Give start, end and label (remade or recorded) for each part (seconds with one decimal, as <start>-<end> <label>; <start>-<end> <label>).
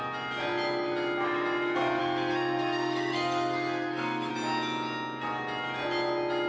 0.0-2.0 recorded; 2.0-4.3 remade; 4.3-6.5 recorded